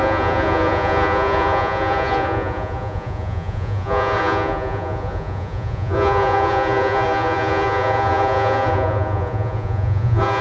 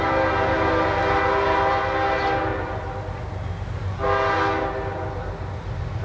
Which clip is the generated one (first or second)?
first